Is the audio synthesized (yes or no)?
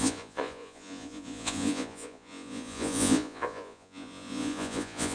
yes